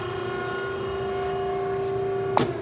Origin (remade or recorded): recorded